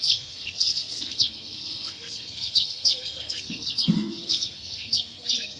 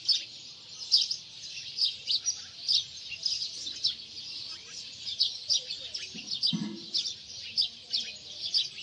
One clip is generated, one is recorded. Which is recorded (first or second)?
second